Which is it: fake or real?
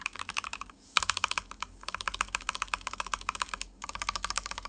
fake